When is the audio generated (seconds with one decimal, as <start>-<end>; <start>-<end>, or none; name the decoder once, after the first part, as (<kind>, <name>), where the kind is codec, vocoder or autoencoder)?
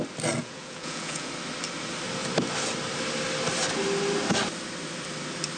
0.4-1.3 (vocoder, Vocos)